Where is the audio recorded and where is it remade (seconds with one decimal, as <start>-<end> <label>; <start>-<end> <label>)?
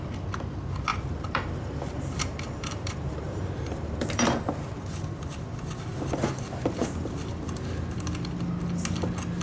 0.0-0.9 recorded; 0.9-4.9 remade; 4.9-9.4 recorded